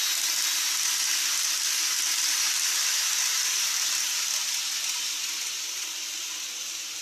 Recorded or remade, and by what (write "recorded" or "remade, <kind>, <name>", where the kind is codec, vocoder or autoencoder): recorded